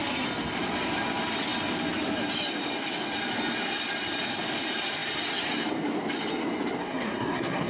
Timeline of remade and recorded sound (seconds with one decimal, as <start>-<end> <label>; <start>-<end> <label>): 0.0-6.8 recorded; 6.8-7.7 remade